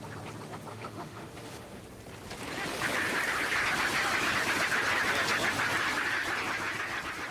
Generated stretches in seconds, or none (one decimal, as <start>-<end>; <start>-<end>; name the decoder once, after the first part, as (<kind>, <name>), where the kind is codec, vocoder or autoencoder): 0.7-1.8 (autoencoder, DAC-VAE)